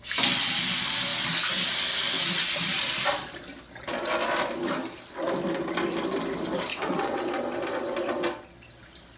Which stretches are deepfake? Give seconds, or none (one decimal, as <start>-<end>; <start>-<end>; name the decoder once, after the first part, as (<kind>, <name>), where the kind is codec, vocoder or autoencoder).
6.7-7.3 (vocoder, WaveNeXt)